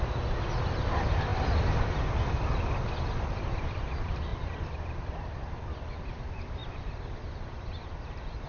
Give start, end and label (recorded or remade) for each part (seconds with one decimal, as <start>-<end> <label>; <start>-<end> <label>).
0.0-8.5 recorded